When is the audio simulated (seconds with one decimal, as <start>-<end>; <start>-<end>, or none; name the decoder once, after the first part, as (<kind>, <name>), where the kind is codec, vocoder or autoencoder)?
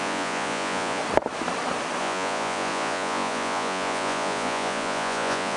0.0-1.0 (vocoder, Vocos); 2.0-5.6